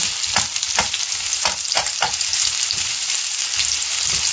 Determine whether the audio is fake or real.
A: real